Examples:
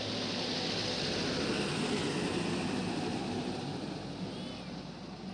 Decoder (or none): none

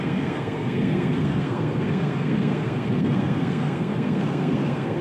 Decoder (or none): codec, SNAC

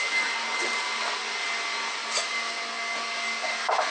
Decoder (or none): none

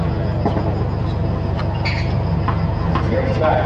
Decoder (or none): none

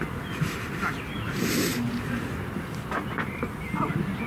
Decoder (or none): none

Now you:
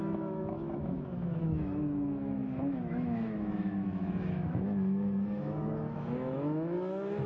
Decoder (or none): autoencoder, DAC-VAE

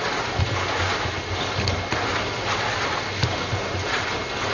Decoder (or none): none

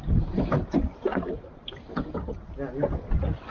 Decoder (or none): none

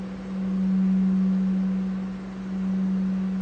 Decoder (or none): none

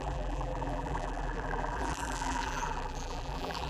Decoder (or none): vocoder, BigVGAN v2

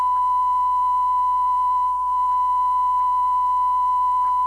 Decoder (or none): none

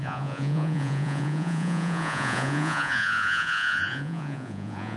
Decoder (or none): vocoder, Vocos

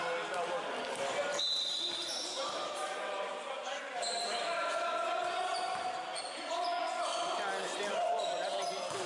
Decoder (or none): none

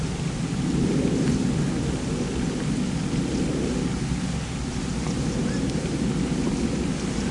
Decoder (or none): none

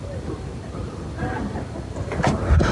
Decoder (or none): none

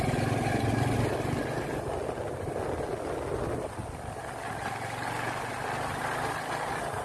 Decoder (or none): none